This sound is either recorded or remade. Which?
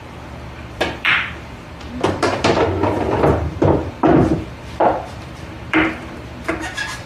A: remade